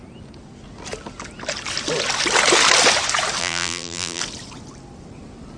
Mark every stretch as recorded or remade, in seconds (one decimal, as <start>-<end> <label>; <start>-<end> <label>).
0.0-3.4 recorded; 3.4-4.2 remade; 4.2-5.6 recorded